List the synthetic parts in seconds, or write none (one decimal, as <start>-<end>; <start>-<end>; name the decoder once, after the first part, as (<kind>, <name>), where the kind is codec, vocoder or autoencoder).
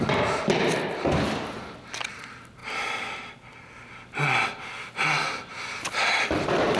none